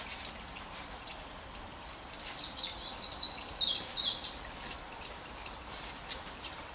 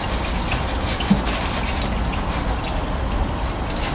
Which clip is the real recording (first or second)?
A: second